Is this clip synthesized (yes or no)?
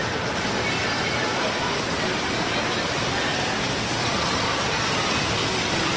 no